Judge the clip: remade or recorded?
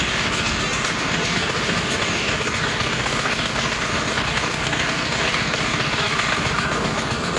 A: remade